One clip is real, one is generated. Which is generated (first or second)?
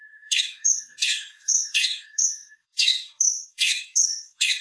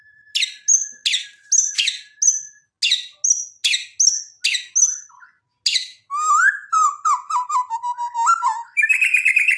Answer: first